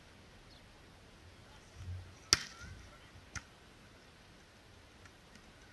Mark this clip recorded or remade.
recorded